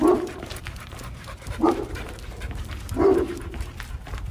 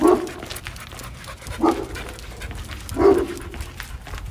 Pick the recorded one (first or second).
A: second